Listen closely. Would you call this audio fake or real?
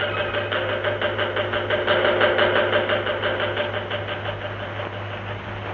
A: real